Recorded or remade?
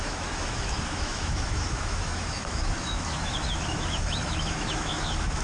remade